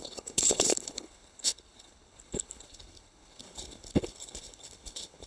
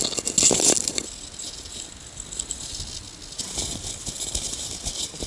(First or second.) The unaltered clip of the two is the second